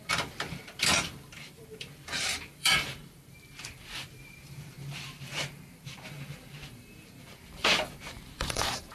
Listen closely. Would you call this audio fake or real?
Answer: fake